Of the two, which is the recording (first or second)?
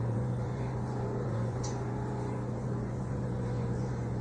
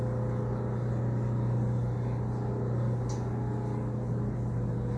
second